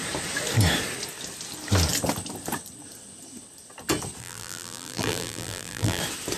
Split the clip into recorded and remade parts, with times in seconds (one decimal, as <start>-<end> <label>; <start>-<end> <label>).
0.0-4.2 recorded; 4.2-6.0 remade; 6.0-6.4 recorded